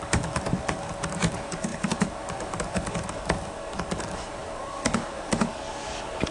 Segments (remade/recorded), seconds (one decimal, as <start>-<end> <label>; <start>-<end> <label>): 0.0-6.3 remade